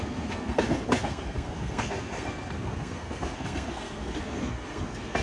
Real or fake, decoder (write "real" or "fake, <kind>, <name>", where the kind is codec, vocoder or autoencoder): fake, codec, SNAC